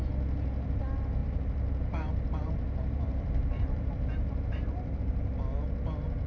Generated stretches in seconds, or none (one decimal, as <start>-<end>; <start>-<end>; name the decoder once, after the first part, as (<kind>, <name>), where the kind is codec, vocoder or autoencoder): 1.2-5.0 (vocoder, BigVGAN v2)